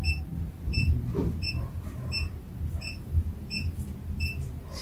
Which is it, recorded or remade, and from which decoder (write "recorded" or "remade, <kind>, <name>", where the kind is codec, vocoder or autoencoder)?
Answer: remade, vocoder, BigVGAN v2